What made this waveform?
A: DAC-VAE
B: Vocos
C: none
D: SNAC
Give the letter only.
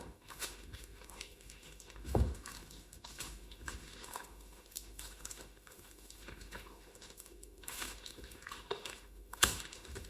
A